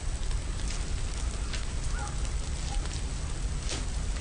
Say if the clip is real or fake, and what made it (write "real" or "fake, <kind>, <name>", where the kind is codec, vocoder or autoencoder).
real